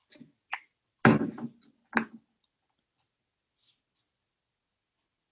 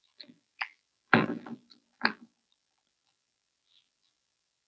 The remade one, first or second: second